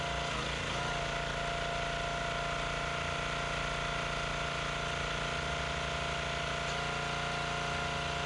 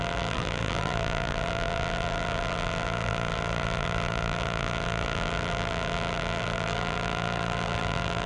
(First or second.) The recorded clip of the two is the first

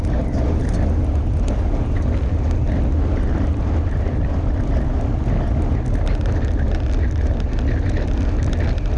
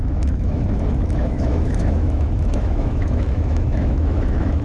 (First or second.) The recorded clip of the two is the first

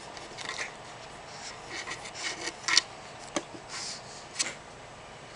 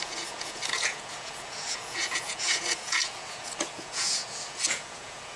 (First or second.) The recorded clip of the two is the first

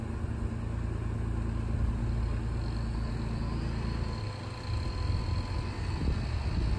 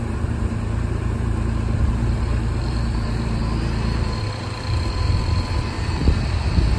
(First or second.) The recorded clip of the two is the first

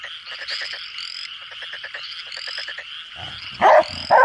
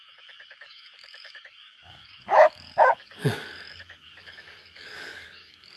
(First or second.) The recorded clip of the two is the first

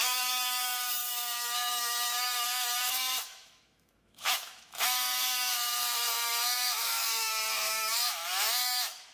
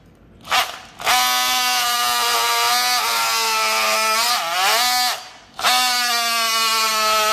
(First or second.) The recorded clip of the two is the second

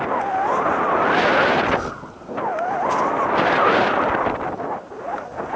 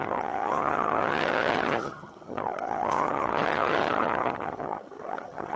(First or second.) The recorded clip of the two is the first